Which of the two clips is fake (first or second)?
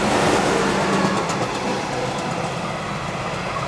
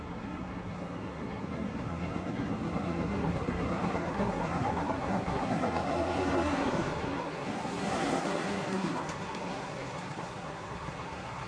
second